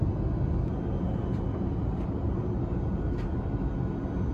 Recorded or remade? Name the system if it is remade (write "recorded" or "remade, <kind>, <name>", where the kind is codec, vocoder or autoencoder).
recorded